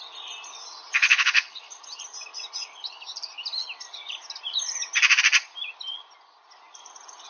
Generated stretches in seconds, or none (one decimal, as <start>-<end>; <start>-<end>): 1.0-1.6